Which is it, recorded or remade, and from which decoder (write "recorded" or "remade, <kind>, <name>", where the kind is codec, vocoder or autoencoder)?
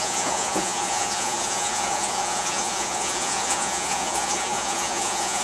remade, vocoder, Vocos